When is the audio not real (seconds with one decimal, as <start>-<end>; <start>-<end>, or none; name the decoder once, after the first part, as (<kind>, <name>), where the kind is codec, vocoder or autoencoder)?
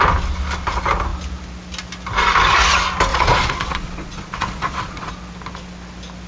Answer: 3.1-5.1 (vocoder, Vocos)